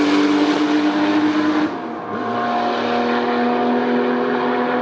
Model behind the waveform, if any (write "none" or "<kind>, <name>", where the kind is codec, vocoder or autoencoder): none